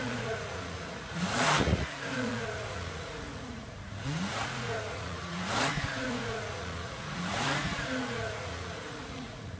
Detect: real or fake fake